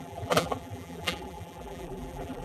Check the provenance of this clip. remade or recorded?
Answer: remade